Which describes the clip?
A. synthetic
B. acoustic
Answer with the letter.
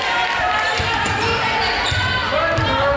B